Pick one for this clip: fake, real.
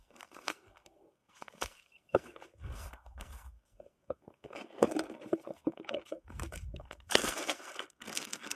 fake